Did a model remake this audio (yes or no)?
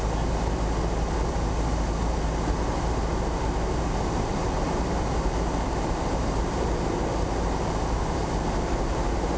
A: no